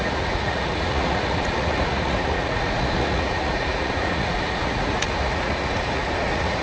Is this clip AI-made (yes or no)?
yes